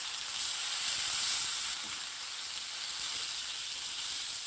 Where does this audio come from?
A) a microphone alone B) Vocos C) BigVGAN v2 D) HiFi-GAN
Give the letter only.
A